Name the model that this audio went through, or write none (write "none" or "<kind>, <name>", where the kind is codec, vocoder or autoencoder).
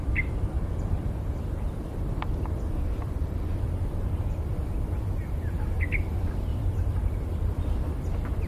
vocoder, BigVGAN v2